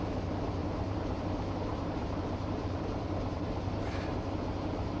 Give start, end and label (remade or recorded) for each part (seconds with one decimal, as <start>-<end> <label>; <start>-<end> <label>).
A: 0.0-0.6 recorded; 0.6-1.2 remade; 1.2-1.7 recorded; 1.7-4.1 remade; 4.1-5.0 recorded